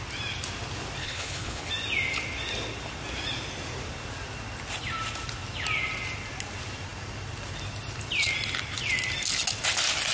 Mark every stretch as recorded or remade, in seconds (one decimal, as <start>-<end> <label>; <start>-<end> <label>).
0.0-1.0 recorded; 1.0-1.7 remade; 1.7-10.1 recorded